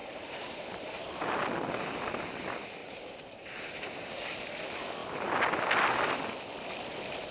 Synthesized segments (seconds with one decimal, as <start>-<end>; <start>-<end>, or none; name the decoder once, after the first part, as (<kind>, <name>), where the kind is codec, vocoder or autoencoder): 0.0-1.2 (vocoder, BigVGAN v2); 2.8-4.2